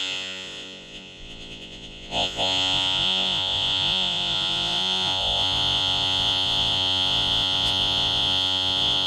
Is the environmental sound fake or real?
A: fake